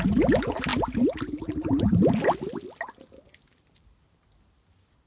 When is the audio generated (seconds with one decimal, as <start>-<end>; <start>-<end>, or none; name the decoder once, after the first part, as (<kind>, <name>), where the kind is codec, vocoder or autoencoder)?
none